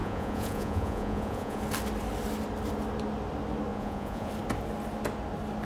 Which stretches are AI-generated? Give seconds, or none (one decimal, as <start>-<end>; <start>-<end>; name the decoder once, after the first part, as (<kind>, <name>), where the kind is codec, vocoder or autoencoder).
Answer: 0.0-1.6 (vocoder, Vocos); 3.7-4.3